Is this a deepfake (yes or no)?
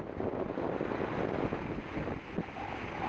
no